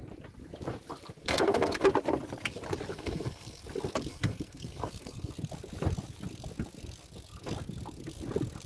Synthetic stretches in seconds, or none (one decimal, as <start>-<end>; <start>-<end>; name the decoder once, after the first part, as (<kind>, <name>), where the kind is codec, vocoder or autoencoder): 1.2-1.8 (codec, SNAC); 2.9-3.6; 4.1-5.3

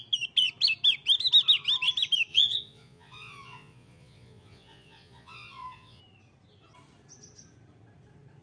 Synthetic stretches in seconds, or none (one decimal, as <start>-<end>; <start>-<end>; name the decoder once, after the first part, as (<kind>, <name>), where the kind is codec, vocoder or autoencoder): 2.3-6.0 (vocoder, Vocos)

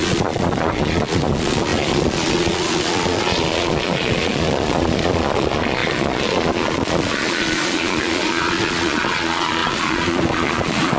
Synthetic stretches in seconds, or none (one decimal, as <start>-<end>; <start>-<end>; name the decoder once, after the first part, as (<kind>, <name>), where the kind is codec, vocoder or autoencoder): 0.0-11.0 (vocoder, Vocos)

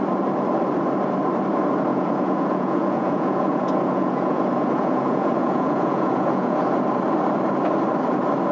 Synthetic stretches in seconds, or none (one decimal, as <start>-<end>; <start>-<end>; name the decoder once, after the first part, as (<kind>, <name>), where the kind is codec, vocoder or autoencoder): 1.9-6.7 (vocoder, Vocos)